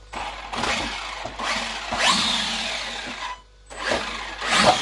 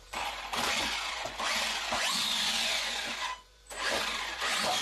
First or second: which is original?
first